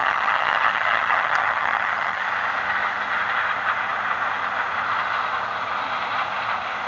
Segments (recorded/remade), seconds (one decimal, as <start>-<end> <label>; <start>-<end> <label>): 0.0-2.3 remade; 2.3-6.9 recorded

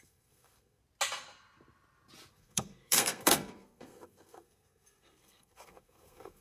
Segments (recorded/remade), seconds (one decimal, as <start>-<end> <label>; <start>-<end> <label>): 0.0-0.8 remade; 0.8-2.3 recorded; 2.3-6.4 remade